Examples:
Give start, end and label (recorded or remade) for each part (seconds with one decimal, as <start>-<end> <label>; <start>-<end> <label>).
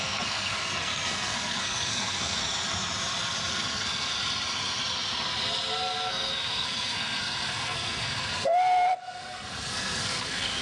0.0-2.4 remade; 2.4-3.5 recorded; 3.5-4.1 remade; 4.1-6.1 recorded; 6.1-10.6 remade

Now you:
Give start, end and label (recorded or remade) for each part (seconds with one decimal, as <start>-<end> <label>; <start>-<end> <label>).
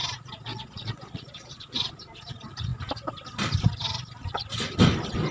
0.0-0.5 recorded; 0.5-1.9 remade; 1.9-5.3 recorded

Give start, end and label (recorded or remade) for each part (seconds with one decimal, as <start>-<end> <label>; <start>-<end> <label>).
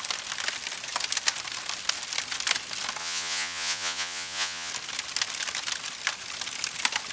0.0-3.0 recorded; 3.0-4.7 remade; 4.7-7.1 recorded